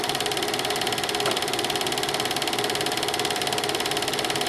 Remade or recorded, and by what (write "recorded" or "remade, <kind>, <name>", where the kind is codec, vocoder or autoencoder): recorded